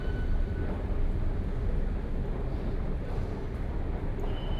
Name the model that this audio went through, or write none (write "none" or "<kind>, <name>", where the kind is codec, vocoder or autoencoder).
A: none